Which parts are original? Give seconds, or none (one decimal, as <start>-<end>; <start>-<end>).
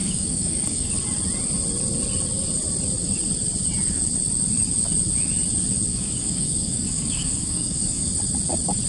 0.9-5.9; 8.1-8.9